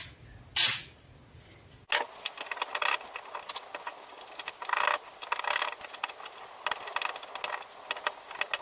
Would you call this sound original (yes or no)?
yes